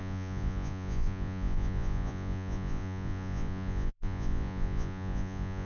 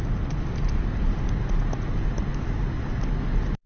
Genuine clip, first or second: second